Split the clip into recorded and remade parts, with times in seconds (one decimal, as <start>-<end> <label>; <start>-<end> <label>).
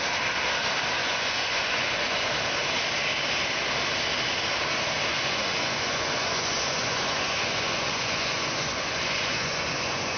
0.0-1.0 recorded; 1.0-2.3 remade; 2.3-5.1 recorded; 5.1-10.2 remade